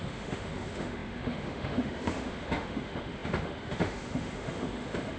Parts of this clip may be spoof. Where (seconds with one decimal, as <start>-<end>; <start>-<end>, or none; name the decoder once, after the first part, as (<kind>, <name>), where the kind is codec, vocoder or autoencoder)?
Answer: 0.0-5.2 (autoencoder, DAC-VAE)